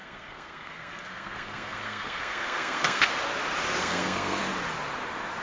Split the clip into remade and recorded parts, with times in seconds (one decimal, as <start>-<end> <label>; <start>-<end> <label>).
0.0-3.1 remade; 3.1-3.8 recorded; 3.8-4.4 remade; 4.4-5.4 recorded